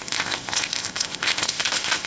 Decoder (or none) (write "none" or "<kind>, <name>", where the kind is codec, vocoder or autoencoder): codec, ZipCodec